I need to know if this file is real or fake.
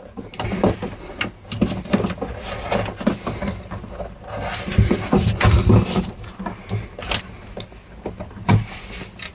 real